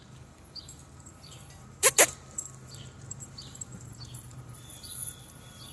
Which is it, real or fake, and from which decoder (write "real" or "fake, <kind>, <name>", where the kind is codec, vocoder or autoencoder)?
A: fake, vocoder, BigVGAN v2